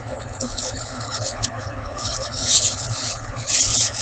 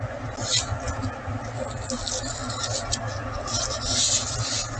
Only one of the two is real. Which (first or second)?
second